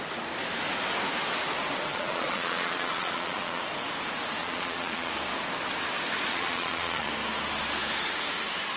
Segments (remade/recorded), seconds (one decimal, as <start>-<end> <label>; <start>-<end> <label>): 0.0-1.9 recorded; 1.9-3.6 remade; 3.6-4.4 recorded; 4.4-5.1 remade; 5.1-6.3 recorded; 6.3-7.1 remade; 7.1-8.8 recorded